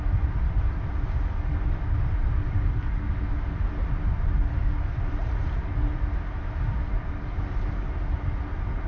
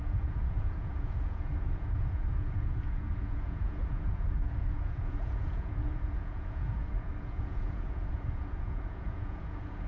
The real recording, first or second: first